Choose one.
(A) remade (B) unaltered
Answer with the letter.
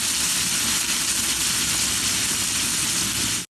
B